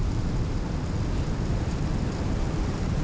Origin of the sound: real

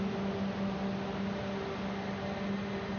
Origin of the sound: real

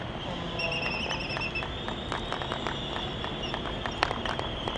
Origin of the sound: real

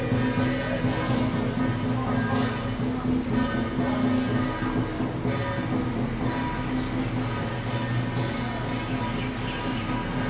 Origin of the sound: real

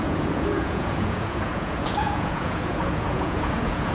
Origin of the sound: fake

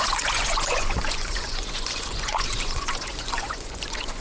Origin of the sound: fake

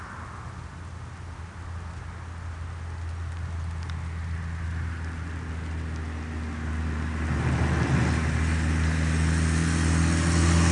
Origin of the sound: real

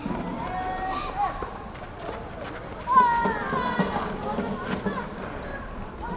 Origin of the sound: real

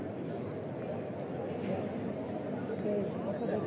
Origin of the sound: real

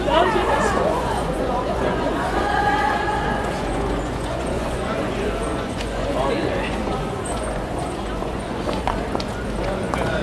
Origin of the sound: fake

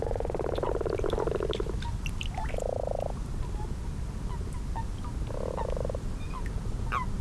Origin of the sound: real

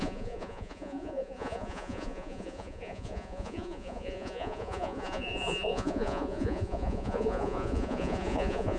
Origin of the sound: fake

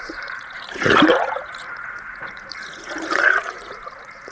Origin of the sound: fake